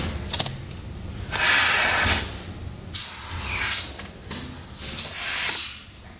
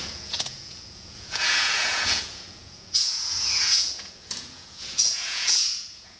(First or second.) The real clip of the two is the first